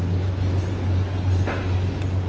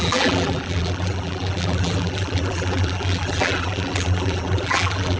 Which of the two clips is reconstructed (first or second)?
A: second